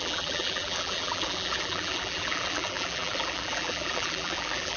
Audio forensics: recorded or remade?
remade